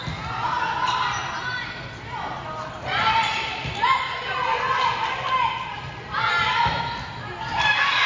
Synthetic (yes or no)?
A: no